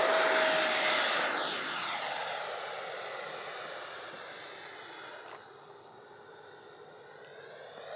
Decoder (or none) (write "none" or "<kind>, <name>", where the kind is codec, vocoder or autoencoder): none